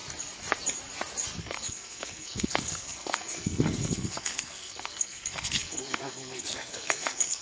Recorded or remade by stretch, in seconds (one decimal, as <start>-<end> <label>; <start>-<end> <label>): 0.0-1.4 recorded; 1.4-7.4 remade